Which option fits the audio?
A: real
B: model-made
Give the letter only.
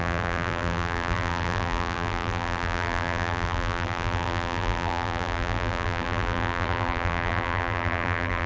B